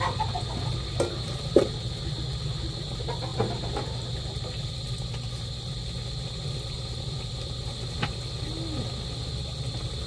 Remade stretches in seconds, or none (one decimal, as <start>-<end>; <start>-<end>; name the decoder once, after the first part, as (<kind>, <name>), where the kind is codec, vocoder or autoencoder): none